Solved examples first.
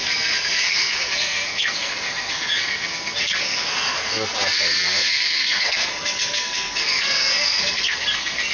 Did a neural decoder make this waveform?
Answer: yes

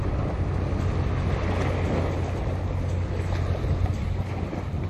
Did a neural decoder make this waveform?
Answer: no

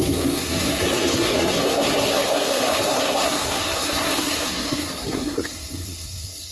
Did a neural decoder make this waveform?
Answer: yes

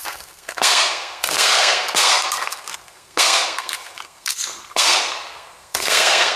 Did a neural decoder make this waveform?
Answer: yes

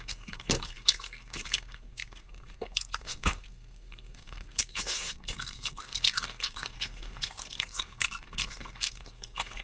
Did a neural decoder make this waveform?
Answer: yes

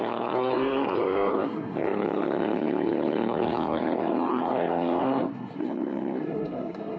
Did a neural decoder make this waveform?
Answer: yes